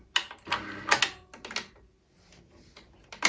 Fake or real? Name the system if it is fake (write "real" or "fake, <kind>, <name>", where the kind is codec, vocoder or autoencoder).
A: real